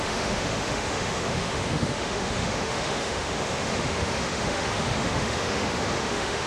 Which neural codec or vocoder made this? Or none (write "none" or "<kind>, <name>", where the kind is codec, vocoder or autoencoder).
autoencoder, DAC-VAE